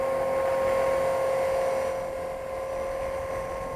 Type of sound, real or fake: real